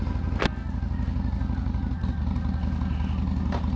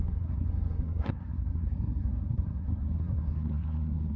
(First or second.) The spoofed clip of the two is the second